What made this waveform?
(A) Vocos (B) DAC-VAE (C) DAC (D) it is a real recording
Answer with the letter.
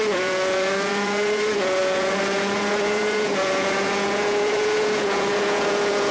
A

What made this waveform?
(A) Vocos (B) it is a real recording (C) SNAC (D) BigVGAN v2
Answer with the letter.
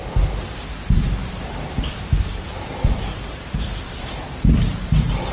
D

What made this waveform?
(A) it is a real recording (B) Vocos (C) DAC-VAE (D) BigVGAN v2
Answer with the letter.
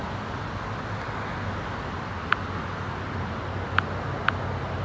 A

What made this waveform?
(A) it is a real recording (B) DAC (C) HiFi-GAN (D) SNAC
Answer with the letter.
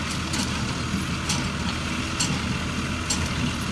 A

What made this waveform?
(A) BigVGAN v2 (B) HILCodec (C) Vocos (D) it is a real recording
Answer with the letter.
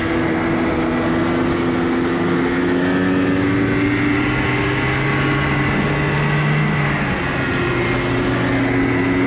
D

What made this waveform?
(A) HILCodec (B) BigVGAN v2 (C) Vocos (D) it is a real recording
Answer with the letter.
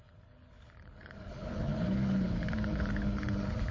A